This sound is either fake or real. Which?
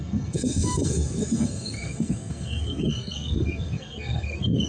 fake